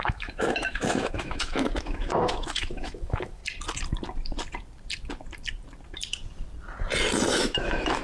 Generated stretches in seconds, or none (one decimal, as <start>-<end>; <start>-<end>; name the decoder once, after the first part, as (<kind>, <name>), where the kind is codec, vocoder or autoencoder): 0.0-3.4 (autoencoder, DAC-VAE); 7.4-8.0